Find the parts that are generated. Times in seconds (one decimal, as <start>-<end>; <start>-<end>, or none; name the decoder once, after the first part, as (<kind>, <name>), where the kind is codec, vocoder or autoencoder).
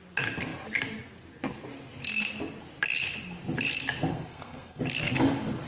4.1-4.8 (codec, SNAC)